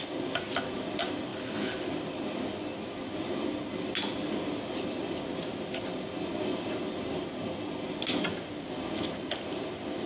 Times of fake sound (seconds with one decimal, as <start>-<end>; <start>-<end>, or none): none

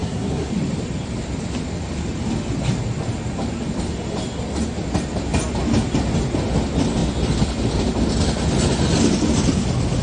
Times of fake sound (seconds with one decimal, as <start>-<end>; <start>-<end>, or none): 0.0-0.5

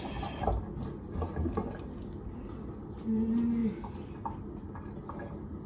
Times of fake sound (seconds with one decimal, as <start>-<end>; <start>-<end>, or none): none

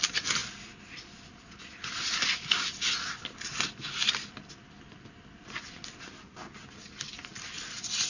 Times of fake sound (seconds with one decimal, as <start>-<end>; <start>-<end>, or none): none

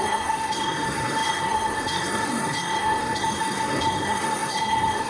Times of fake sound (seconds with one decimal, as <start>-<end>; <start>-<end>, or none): 0.0-5.1